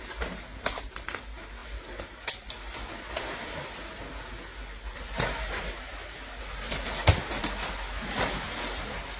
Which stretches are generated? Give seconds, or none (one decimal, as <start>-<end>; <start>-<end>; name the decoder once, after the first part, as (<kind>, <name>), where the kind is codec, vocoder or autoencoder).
none